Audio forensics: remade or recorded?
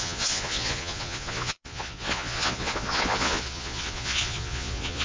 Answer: remade